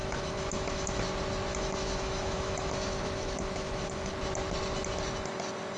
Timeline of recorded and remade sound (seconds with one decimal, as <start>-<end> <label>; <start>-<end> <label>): 0.0-1.0 remade; 1.0-1.5 recorded; 1.5-4.1 remade; 4.1-5.8 recorded